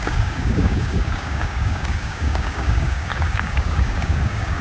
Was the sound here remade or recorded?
remade